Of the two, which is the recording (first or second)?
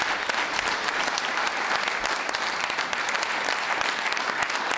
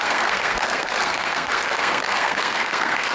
first